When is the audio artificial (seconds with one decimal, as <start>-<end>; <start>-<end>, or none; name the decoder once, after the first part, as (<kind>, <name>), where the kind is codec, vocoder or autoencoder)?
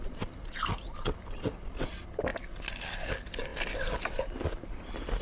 none